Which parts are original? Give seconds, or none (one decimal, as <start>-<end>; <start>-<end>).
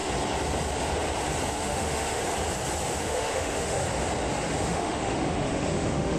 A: 0.0-1.5; 2.2-3.0; 3.8-4.6